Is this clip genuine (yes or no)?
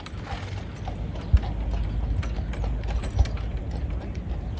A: yes